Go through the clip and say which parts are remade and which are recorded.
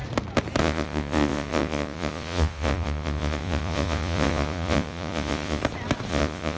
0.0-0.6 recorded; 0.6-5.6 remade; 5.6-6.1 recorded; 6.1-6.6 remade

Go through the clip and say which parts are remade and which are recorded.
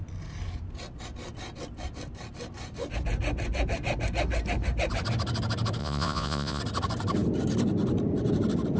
0.0-5.8 recorded; 5.8-6.6 remade; 6.6-8.8 recorded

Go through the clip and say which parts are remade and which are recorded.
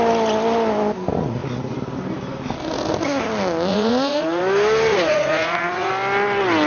0.0-3.7 recorded; 3.7-4.4 remade; 4.4-4.9 recorded; 4.9-5.9 remade; 5.9-6.7 recorded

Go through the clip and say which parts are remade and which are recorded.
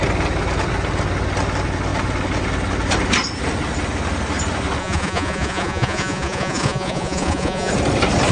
0.0-4.8 recorded; 4.8-7.7 remade; 7.7-8.3 recorded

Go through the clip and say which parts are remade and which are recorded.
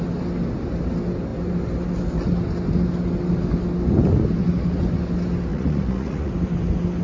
0.0-5.5 recorded; 5.5-6.3 remade; 6.3-7.0 recorded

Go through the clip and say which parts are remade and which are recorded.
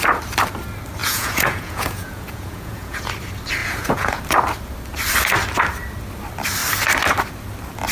0.0-1.0 recorded; 1.0-3.1 remade; 3.1-3.6 recorded; 3.6-4.2 remade; 4.2-7.9 recorded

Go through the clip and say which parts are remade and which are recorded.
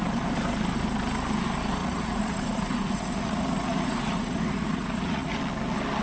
0.0-1.8 recorded; 1.8-5.4 remade; 5.4-6.0 recorded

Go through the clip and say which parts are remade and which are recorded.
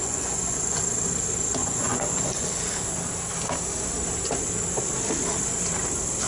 0.0-0.8 remade; 0.8-1.6 recorded; 1.6-2.5 remade; 2.5-6.3 recorded